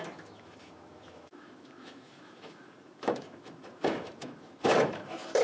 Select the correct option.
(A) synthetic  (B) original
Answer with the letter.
A